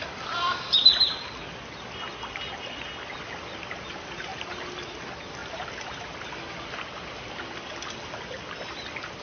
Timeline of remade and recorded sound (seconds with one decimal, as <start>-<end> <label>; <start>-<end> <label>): 0.0-9.2 remade